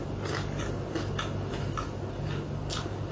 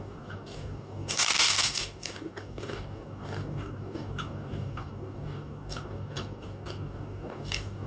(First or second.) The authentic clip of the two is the first